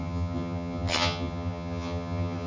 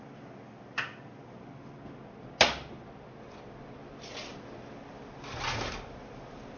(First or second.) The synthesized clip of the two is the first